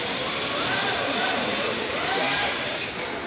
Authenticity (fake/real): fake